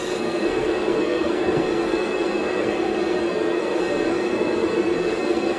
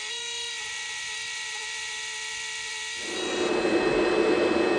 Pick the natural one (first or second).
second